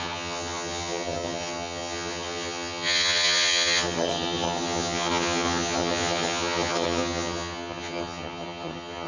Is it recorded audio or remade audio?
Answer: remade